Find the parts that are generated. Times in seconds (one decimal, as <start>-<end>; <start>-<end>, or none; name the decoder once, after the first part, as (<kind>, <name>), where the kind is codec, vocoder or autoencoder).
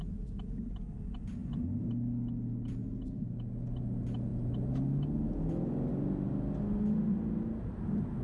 none